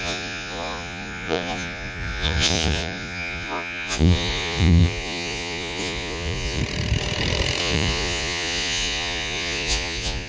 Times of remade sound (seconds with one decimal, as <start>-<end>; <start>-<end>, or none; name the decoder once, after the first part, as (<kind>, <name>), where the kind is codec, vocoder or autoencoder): 0.0-6.6 (vocoder, Vocos); 7.6-10.3